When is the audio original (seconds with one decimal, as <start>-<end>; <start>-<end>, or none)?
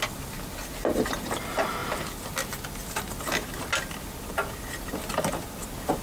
0.0-6.0